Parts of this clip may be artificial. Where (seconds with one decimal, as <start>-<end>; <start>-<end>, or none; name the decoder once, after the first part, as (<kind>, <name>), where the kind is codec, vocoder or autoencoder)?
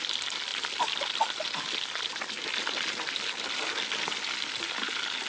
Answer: none